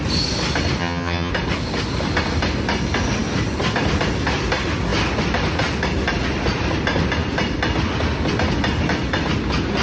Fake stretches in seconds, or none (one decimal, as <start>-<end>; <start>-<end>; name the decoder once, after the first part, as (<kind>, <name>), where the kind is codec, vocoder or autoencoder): 0.8-1.3 (vocoder, HiFi-GAN)